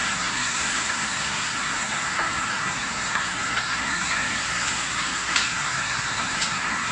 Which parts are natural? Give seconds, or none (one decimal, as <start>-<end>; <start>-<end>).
none